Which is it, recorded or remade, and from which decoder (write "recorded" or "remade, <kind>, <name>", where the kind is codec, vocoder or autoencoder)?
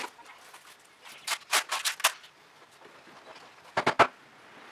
recorded